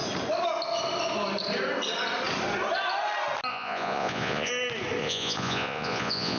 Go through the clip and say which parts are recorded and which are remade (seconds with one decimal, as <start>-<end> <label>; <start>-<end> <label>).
0.0-3.5 recorded; 3.5-4.5 remade; 4.5-5.0 recorded; 5.0-6.4 remade